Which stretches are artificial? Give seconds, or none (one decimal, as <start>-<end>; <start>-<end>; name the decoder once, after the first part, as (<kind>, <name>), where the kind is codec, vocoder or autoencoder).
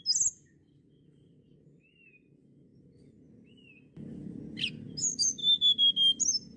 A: none